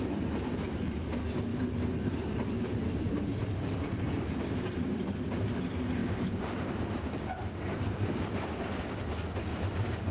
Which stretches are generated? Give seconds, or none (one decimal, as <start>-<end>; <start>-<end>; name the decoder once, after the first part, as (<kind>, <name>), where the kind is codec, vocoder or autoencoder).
1.5-5.0 (vocoder, BigVGAN v2); 6.0-8.1; 9.5-10.1